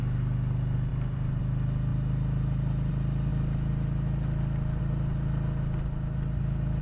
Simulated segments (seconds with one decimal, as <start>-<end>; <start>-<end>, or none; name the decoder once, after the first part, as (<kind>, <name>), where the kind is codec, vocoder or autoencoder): 0.9-1.4 (vocoder, BigVGAN v2)